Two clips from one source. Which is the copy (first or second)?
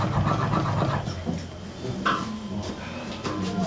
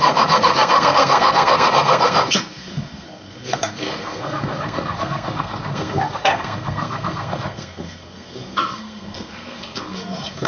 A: second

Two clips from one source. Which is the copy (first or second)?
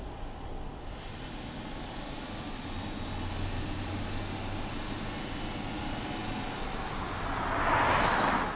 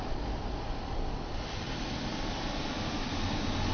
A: second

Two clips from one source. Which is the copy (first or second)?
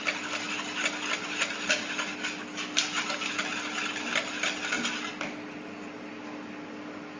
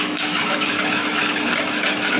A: second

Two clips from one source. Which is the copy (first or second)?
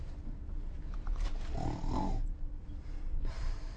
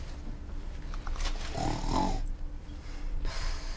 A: first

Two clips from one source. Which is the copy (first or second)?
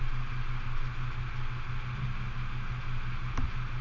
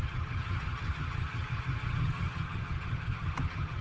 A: second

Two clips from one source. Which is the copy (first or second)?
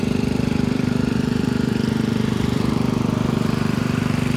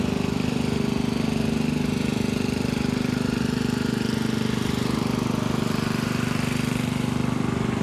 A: first